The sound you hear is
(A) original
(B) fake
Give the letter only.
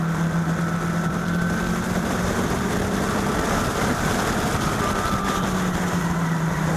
B